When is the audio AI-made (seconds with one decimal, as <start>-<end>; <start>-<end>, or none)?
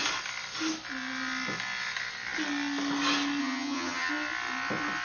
3.4-4.1